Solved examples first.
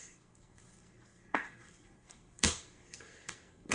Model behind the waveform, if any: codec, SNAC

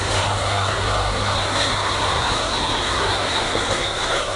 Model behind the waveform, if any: codec, SNAC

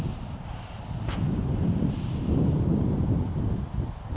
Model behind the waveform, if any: none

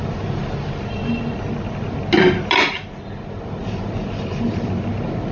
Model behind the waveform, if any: none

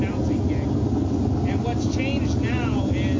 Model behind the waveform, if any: none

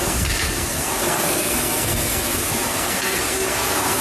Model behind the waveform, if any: codec, SNAC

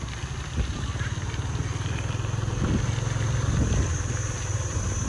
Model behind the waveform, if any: none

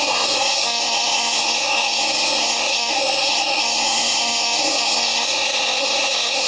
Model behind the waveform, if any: codec, SNAC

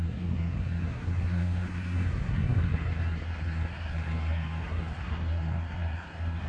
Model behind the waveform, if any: codec, SNAC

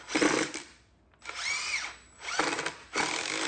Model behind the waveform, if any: none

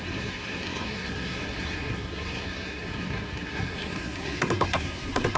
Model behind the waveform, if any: codec, SNAC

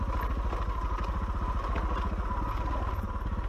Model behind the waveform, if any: none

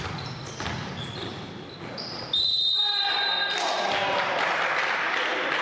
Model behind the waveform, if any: none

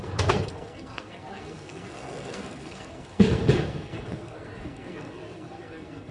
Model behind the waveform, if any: codec, SNAC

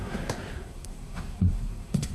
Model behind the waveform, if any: codec, SNAC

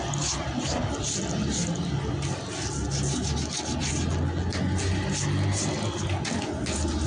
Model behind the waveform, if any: none